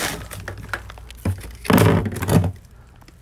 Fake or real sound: real